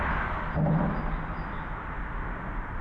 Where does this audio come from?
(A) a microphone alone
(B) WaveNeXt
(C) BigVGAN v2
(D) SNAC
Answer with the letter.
A